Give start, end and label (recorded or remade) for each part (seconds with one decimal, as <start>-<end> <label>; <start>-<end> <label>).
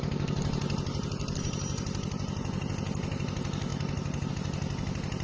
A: 0.0-5.2 recorded